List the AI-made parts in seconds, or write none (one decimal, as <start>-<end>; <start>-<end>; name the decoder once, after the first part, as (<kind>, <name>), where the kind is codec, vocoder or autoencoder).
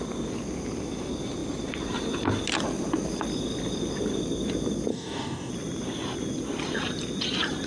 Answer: 4.9-5.5 (codec, DAC)